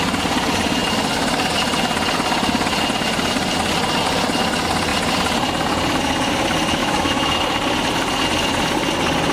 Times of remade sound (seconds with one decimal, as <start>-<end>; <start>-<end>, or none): 6.8-7.4